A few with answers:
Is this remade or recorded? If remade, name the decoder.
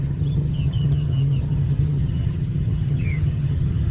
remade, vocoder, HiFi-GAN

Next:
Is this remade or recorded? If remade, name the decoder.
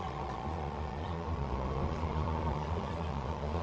remade, vocoder, Vocos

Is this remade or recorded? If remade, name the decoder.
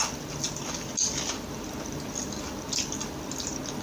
recorded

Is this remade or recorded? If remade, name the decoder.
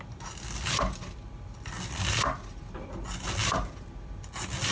recorded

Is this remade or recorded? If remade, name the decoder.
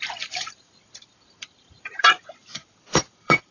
remade, vocoder, BigVGAN v2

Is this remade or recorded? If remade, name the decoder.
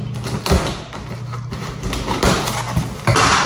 recorded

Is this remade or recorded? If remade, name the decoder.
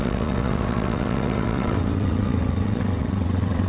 remade, vocoder, WaveNeXt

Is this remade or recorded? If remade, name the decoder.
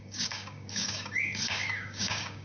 remade, codec, DAC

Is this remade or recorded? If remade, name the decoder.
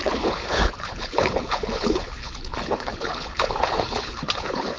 remade, codec, HILCodec